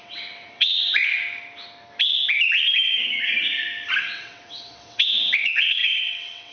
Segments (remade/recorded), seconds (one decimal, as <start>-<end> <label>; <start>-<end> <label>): 0.0-1.0 remade; 1.0-4.0 recorded; 4.0-6.5 remade